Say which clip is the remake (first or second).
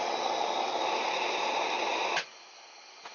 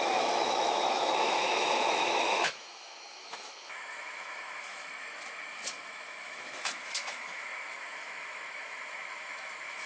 second